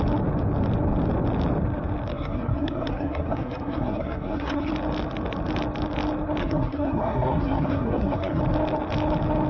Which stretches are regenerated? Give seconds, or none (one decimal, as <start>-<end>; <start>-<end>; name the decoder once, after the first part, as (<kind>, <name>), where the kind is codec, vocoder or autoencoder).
2.1-4.7 (codec, SNAC); 6.4-8.4